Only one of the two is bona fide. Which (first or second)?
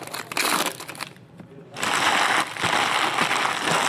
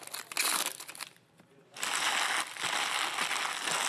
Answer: second